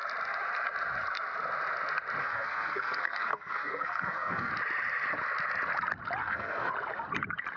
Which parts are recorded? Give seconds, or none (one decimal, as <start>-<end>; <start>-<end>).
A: 0.0-2.2; 4.5-6.2; 6.7-7.6